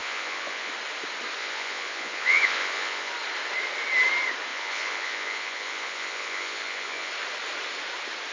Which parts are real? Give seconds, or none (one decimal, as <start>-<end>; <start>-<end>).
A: 0.7-1.4; 3.1-4.5; 7.1-8.3